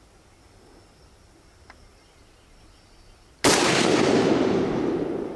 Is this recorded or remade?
recorded